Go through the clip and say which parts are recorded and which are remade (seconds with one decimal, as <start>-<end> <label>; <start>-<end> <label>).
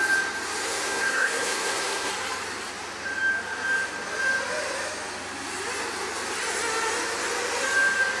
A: 0.0-0.7 recorded; 0.7-2.1 remade; 2.1-8.2 recorded